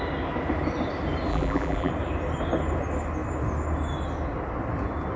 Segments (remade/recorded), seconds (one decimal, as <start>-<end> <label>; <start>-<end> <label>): 0.0-1.3 recorded; 1.3-1.9 remade; 1.9-5.2 recorded